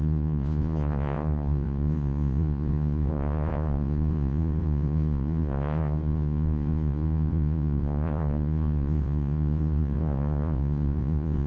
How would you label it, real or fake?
fake